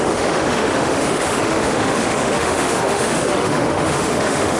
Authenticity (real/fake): fake